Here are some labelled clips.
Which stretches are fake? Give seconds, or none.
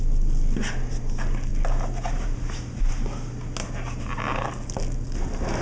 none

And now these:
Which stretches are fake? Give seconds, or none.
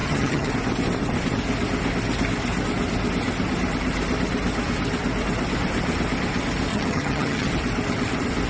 0.0-0.5 (vocoder, HiFi-GAN); 6.7-7.5